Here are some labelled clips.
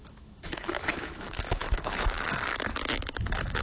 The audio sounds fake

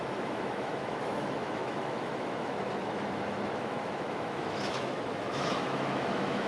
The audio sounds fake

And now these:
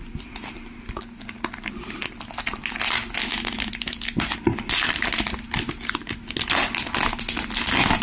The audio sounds real